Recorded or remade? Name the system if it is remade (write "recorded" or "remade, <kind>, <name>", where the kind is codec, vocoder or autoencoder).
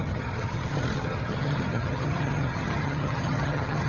remade, vocoder, HiFi-GAN